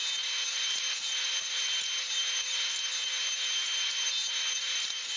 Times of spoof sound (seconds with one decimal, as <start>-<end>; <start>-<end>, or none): 0.0-5.2